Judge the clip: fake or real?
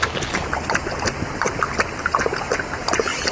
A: real